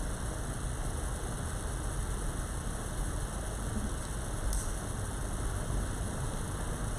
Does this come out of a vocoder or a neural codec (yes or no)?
no